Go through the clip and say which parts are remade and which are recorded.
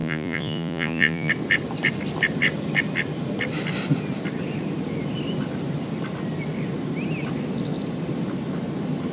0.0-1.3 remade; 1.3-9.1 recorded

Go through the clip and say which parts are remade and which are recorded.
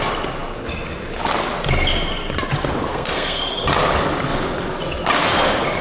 0.0-2.9 recorded; 2.9-3.5 remade; 3.5-5.8 recorded